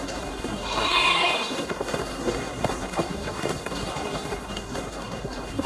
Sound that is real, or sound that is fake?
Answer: fake